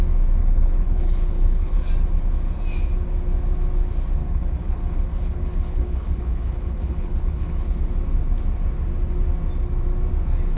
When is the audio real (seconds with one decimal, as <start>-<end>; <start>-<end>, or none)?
0.0-0.4; 1.9-4.2; 7.7-10.6